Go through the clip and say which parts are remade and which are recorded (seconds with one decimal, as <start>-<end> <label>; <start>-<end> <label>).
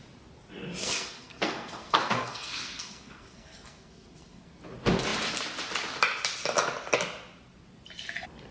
0.0-0.8 recorded; 0.8-4.6 remade; 4.6-8.5 recorded